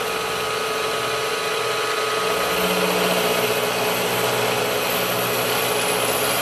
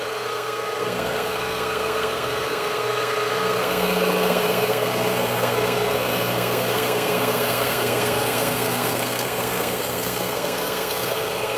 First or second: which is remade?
second